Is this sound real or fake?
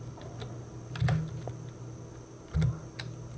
real